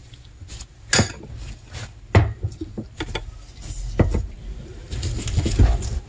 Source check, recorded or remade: recorded